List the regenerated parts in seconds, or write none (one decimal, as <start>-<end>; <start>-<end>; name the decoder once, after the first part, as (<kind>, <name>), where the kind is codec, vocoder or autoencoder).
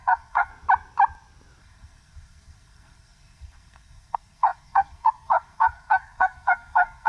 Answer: 0.0-0.5 (codec, SNAC); 1.6-7.1